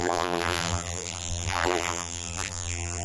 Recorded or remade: remade